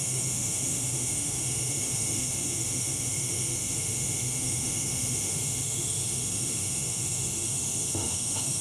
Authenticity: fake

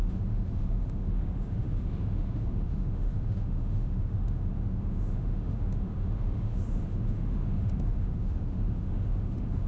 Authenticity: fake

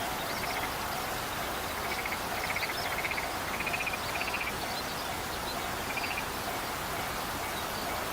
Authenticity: real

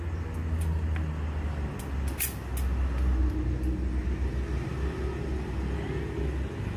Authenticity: real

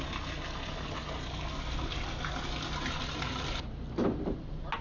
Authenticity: real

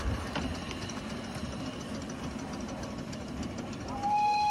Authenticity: real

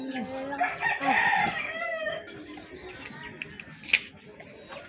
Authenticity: real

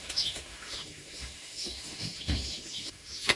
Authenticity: fake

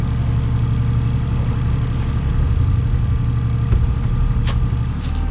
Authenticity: real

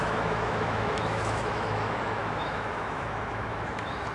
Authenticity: fake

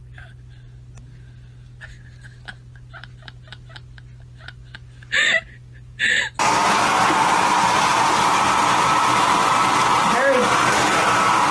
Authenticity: real